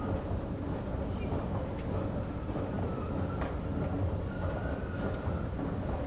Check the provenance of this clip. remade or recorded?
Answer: recorded